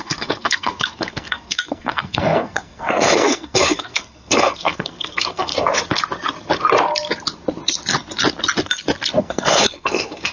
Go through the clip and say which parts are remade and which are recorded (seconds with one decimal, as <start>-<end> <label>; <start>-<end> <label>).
0.0-5.5 remade; 5.5-9.2 recorded; 9.2-10.3 remade